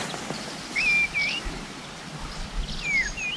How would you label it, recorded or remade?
recorded